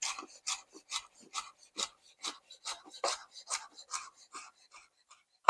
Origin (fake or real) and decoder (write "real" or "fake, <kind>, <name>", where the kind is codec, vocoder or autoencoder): real